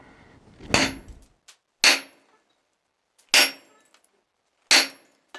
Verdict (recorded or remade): recorded